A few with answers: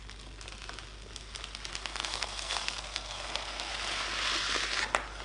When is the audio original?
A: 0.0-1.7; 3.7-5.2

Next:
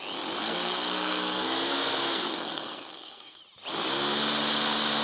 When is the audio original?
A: 0.0-0.4; 3.4-5.0

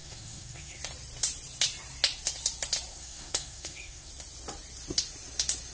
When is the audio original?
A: 0.8-2.9; 4.1-5.7

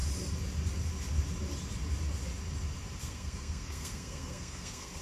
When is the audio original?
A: 0.0-3.0